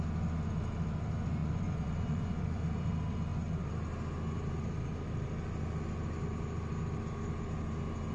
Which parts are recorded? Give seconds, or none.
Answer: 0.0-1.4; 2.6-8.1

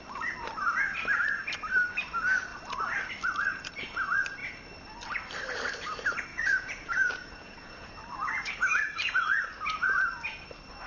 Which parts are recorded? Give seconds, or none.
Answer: 0.0-6.3; 7.9-10.9

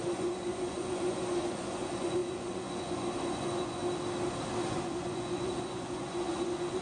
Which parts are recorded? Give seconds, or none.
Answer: 3.8-4.7

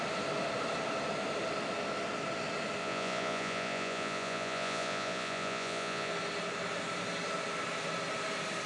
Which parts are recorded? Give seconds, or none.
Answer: 0.0-2.8; 6.1-8.7

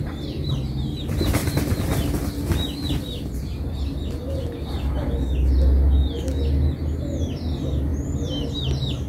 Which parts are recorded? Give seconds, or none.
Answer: 0.0-9.1

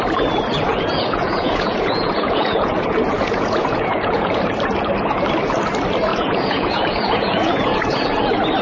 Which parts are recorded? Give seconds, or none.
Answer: 0.0-0.7; 4.4-6.1; 8.2-8.6